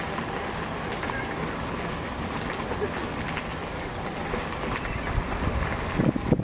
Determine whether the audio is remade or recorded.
recorded